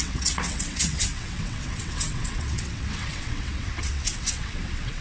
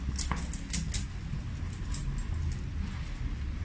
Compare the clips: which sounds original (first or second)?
second